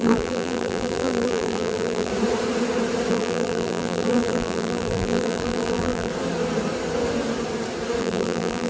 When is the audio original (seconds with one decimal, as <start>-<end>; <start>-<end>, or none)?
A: 2.1-3.1; 6.1-8.0